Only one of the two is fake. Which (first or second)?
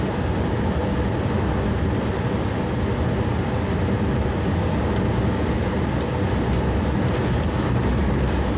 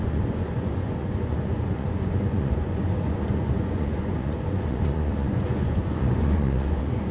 second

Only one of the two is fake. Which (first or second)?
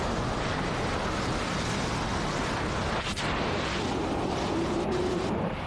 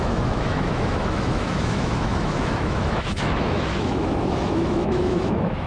second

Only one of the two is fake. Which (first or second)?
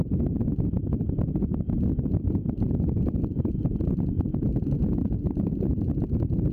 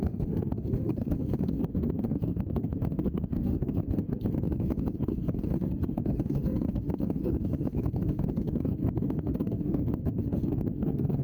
second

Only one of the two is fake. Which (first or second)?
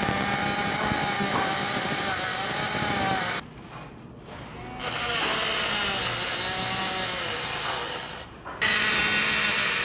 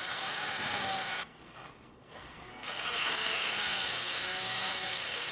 second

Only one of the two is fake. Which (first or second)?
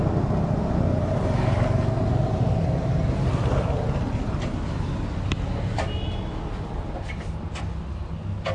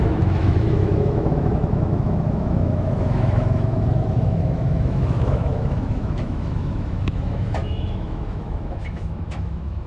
second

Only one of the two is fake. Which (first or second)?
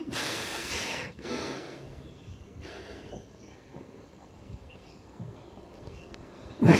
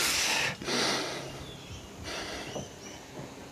first